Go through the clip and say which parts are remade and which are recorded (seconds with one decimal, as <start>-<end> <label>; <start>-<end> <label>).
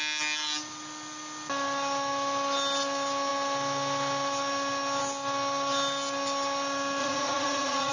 0.0-7.0 recorded; 7.0-7.9 remade